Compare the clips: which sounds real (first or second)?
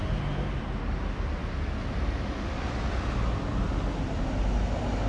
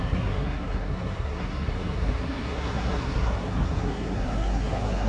first